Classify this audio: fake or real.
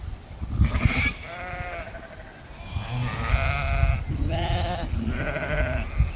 fake